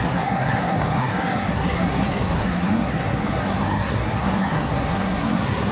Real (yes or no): no